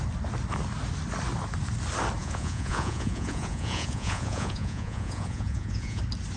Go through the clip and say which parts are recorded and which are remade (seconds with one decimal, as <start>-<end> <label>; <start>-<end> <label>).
0.0-2.2 recorded; 2.2-6.0 remade; 6.0-6.4 recorded